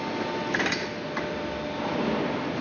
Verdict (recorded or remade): recorded